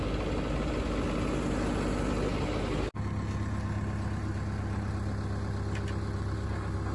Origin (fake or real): real